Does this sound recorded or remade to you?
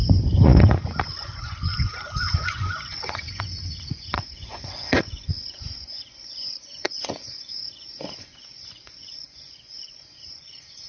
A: remade